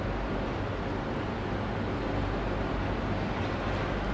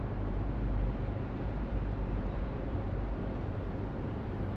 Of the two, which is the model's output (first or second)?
second